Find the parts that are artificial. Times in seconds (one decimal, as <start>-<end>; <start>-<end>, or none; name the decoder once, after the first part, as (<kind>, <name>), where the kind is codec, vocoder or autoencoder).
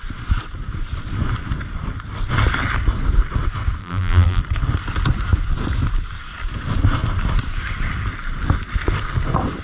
3.8-4.4 (vocoder, BigVGAN v2)